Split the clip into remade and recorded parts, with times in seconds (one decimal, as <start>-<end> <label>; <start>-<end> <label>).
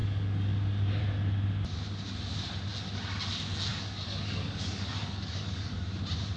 0.0-1.0 remade; 1.0-3.7 recorded; 3.7-6.0 remade; 6.0-6.4 recorded